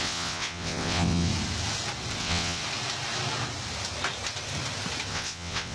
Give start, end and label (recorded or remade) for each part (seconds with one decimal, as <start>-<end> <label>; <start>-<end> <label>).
0.0-1.3 remade; 1.3-2.2 recorded; 2.2-2.6 remade; 2.6-5.1 recorded; 5.1-5.7 remade